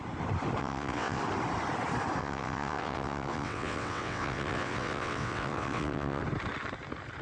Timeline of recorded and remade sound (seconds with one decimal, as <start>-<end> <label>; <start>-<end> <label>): 0.0-0.6 recorded; 0.6-1.2 remade; 1.2-2.2 recorded; 2.2-6.2 remade; 6.2-7.2 recorded